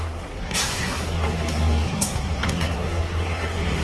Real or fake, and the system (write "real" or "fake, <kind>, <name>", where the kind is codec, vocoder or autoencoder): fake, codec, SNAC